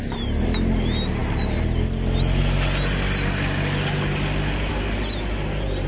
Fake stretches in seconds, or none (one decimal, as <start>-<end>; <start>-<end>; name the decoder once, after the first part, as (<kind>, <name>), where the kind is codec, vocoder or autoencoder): none